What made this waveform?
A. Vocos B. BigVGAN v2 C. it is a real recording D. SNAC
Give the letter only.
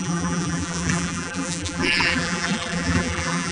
B